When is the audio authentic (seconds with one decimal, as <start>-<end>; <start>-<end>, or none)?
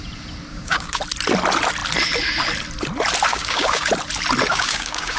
0.0-0.5; 1.0-3.3; 3.9-4.5